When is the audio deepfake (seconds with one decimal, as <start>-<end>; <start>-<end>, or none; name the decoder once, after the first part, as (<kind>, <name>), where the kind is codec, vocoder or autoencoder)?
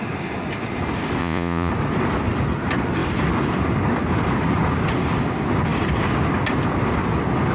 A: 1.2-1.7 (vocoder, Vocos)